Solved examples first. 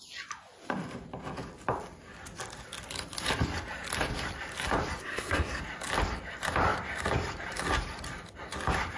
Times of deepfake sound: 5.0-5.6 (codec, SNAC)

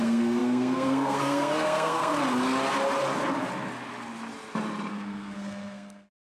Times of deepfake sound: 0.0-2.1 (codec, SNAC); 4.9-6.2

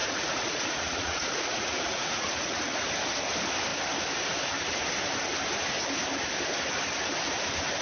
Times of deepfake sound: 0.0-2.9 (vocoder, Vocos)